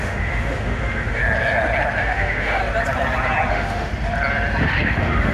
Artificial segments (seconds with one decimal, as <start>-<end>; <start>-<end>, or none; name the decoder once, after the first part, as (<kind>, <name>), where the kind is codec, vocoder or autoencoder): 0.0-1.2 (autoencoder, DAC-VAE); 2.0-2.6; 3.5-3.9; 4.6-5.3